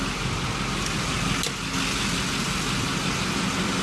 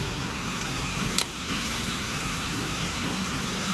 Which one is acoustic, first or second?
first